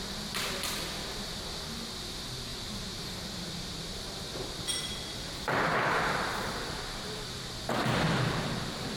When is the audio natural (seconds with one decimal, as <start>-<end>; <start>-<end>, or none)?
0.0-2.5; 7.4-9.0